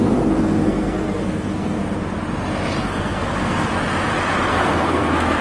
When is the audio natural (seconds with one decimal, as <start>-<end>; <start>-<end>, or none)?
1.8-2.8; 3.7-4.5